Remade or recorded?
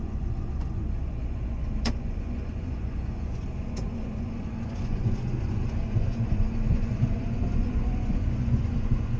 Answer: remade